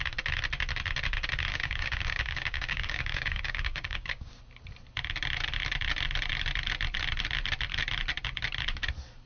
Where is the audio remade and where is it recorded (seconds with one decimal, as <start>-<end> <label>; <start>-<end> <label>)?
0.0-1.5 recorded; 1.5-4.4 remade; 4.4-9.3 recorded